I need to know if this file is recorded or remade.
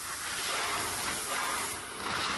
recorded